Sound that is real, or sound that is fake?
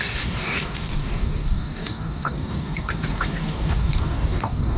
fake